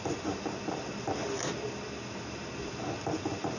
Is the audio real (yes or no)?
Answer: yes